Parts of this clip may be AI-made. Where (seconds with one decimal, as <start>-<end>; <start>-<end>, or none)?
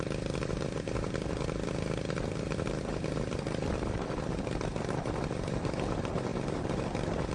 0.0-6.3